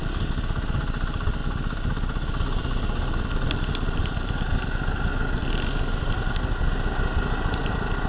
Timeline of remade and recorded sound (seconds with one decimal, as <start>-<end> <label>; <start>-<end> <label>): 0.0-8.1 recorded